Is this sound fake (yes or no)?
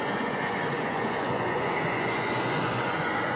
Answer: yes